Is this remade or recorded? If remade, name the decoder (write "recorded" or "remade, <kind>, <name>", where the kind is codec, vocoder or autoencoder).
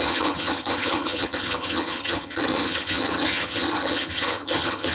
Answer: remade, vocoder, HiFi-GAN